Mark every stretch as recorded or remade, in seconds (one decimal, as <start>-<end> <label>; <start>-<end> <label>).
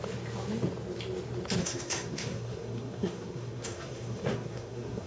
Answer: 0.0-1.6 recorded; 1.6-5.1 remade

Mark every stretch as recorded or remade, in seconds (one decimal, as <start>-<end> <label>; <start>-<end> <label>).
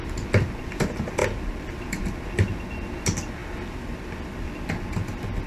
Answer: 0.0-5.5 recorded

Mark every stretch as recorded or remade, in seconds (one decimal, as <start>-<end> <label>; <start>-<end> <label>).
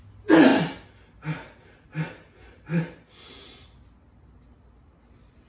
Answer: 0.0-5.5 recorded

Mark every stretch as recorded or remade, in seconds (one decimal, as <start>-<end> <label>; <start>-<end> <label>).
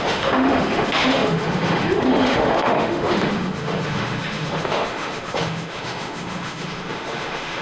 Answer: 0.0-7.6 remade